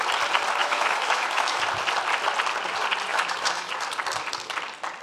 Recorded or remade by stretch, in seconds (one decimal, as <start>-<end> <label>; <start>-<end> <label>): 0.0-0.6 recorded; 0.6-1.6 remade; 1.6-3.1 recorded; 3.1-3.7 remade; 3.7-5.0 recorded